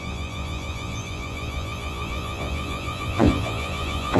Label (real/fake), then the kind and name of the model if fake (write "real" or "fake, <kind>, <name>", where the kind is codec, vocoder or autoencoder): fake, vocoder, Vocos